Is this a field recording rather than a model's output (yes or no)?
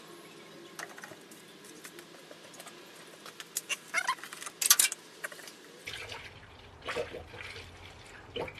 yes